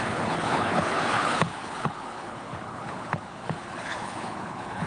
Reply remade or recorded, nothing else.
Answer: remade